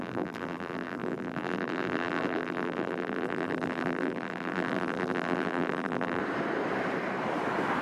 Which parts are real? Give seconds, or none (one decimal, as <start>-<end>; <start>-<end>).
6.2-7.8